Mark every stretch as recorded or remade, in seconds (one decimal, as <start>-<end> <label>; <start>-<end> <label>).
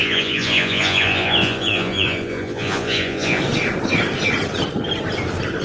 0.0-3.4 remade; 3.4-5.6 recorded